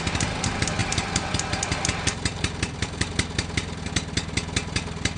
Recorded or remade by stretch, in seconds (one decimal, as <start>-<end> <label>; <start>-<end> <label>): 0.0-0.8 recorded; 0.8-1.8 remade; 1.8-2.3 recorded; 2.3-3.1 remade; 3.1-5.2 recorded

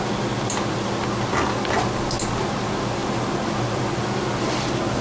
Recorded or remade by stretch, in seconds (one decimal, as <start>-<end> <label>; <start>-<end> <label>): 0.0-5.0 recorded